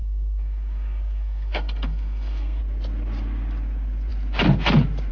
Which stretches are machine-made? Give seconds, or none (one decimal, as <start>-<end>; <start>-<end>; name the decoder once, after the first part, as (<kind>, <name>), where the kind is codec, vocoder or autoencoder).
0.0-2.6 (codec, SNAC)